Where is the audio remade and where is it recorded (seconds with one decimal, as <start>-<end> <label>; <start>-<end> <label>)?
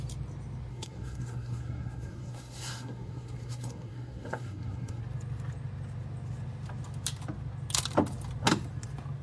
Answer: 0.0-0.7 recorded; 0.7-5.0 remade; 5.0-9.2 recorded